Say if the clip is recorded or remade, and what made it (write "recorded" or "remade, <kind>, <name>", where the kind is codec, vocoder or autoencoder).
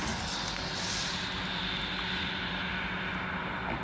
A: recorded